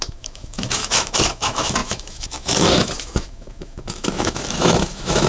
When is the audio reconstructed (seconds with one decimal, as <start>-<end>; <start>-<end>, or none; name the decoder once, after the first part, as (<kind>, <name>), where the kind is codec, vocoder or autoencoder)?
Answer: 0.0-5.3 (autoencoder, DAC-VAE)